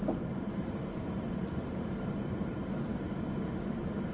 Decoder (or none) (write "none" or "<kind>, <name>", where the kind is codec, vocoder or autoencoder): vocoder, BigVGAN v2